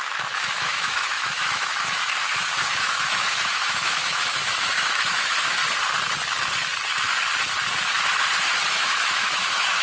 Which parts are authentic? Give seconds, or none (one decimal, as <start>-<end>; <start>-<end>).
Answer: 5.6-8.7